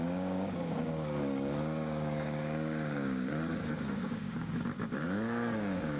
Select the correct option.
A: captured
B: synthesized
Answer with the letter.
B